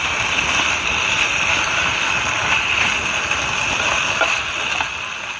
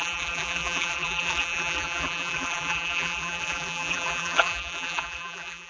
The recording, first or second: first